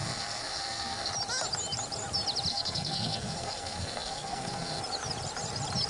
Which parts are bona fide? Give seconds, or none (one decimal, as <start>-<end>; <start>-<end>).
1.1-2.5; 4.8-5.9